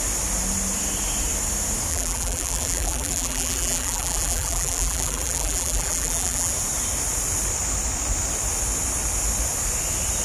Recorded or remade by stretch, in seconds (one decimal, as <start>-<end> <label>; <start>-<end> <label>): 0.0-1.9 recorded; 1.9-6.5 remade; 6.5-10.2 recorded